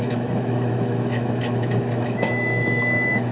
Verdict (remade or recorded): remade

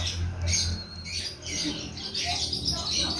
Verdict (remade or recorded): recorded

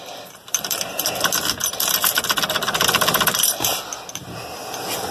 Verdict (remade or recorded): recorded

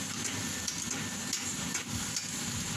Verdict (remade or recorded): recorded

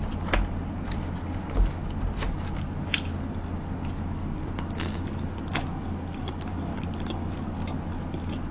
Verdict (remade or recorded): recorded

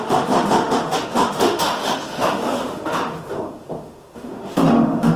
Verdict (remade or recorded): remade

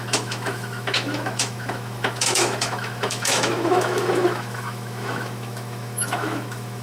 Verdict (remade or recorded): remade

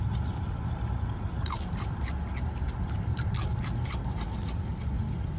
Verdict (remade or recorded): recorded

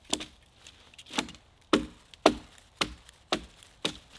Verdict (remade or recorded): recorded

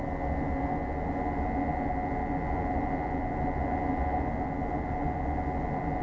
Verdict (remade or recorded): recorded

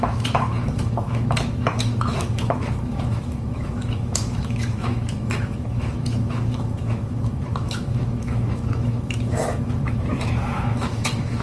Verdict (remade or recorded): remade